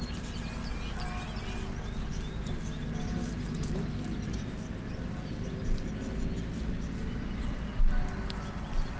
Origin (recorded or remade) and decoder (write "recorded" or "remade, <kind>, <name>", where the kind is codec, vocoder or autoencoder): recorded